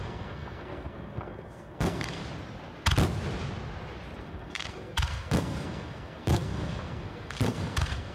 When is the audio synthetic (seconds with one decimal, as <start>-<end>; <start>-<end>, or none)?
0.0-2.2; 4.2-8.1